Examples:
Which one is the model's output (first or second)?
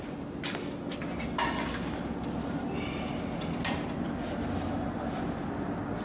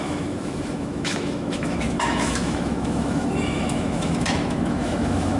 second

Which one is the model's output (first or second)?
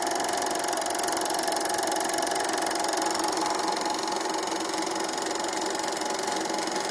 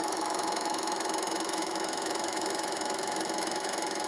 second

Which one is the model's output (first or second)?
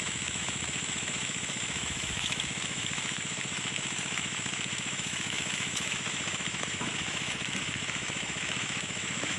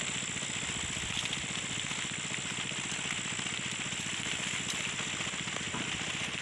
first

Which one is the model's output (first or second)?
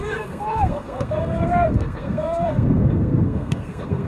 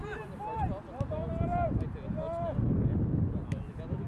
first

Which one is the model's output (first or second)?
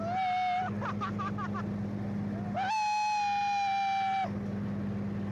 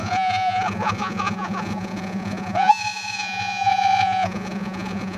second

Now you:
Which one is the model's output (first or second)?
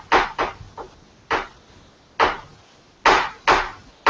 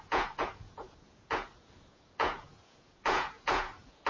second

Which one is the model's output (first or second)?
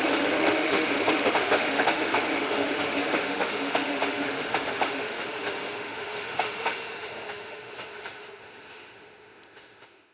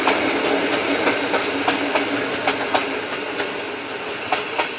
first